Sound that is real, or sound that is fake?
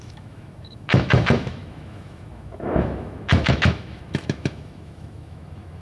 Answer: fake